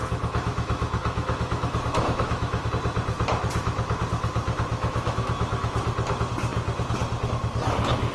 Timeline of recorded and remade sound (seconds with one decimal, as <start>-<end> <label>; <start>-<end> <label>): 0.0-2.7 remade; 2.7-4.7 recorded; 4.7-5.8 remade; 5.8-8.1 recorded